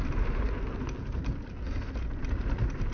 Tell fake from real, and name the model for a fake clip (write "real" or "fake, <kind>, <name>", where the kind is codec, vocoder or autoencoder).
real